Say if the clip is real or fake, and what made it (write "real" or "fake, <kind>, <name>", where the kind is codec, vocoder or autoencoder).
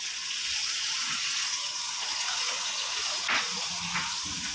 fake, vocoder, Vocos